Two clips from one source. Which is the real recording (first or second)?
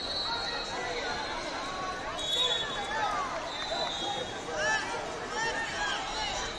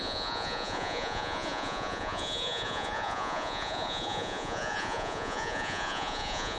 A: first